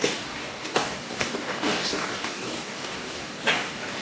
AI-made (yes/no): yes